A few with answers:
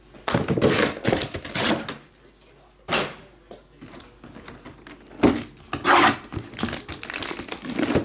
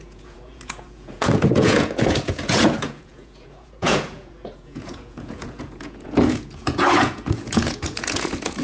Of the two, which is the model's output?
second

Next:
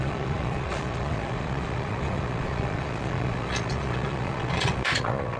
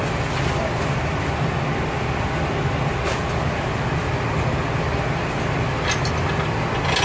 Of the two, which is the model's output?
first